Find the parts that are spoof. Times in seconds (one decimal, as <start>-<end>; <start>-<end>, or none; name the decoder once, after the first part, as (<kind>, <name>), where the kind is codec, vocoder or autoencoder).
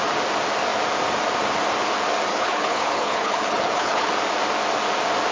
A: 2.3-4.1 (codec, HILCodec)